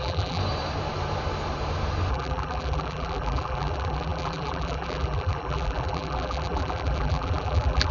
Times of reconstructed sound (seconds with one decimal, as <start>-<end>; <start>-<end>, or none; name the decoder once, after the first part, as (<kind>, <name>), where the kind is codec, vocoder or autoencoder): 0.0-0.4 (vocoder, BigVGAN v2); 2.1-7.9